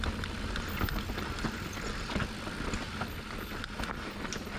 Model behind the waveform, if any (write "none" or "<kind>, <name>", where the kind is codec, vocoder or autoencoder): none